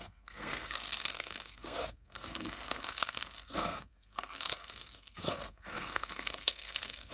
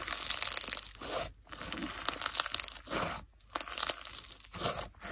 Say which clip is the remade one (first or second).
first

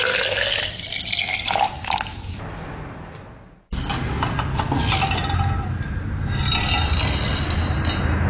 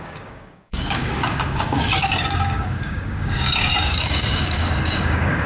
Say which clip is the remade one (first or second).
second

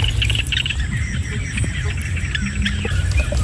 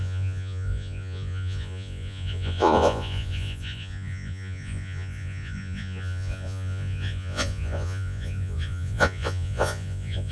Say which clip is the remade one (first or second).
second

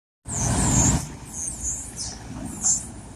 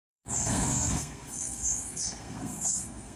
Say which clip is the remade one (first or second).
second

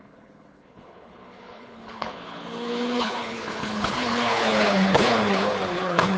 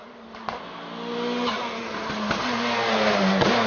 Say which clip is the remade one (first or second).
first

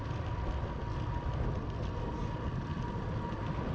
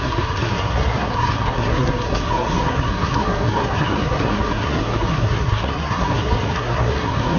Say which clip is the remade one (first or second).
second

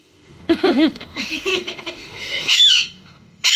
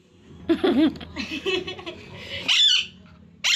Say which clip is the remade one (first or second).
first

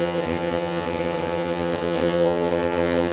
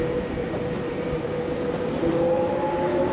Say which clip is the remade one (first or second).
first